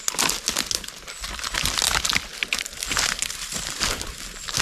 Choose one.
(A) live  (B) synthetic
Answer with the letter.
A